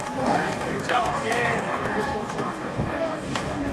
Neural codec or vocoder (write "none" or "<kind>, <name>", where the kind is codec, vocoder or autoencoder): codec, DAC